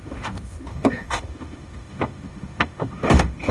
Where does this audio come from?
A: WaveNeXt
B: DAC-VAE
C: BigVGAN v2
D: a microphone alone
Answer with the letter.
B